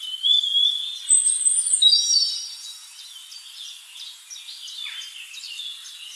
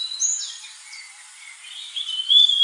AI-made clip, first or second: second